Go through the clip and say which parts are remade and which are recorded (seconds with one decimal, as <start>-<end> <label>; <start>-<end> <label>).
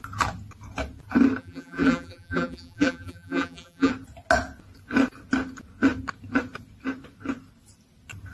0.0-1.4 recorded; 1.4-3.9 remade; 3.9-8.3 recorded